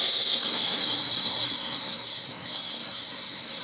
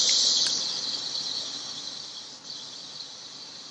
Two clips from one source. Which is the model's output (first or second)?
first